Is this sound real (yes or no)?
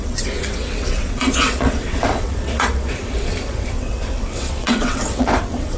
no